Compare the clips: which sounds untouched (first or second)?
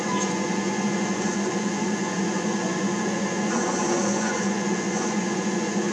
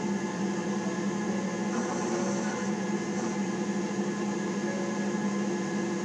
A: second